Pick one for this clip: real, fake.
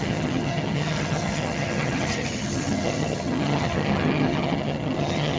fake